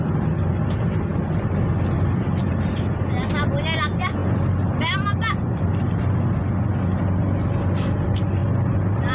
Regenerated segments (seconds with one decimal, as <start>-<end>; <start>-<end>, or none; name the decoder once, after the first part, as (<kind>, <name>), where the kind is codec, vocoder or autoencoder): 8.4-9.1 (vocoder, BigVGAN v2)